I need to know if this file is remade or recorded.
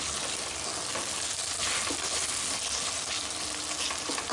recorded